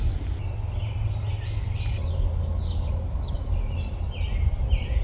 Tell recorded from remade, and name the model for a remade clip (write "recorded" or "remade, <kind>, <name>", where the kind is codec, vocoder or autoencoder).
recorded